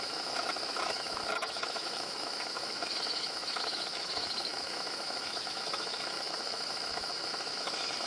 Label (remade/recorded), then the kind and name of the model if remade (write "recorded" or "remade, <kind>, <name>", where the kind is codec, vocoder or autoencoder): remade, autoencoder, DAC-VAE